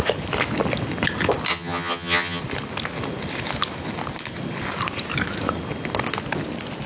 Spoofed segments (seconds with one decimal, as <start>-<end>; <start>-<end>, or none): 1.5-2.4